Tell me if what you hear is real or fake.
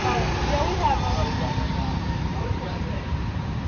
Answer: fake